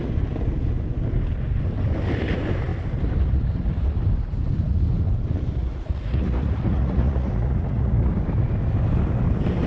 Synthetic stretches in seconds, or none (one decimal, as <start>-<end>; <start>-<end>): 5.6-8.1